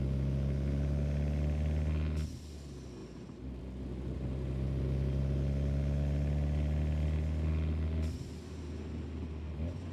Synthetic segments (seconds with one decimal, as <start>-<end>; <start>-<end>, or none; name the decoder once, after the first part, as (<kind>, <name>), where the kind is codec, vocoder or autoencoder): none